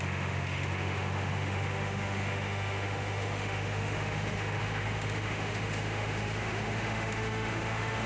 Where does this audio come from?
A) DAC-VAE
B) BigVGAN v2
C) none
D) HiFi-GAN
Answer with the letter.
A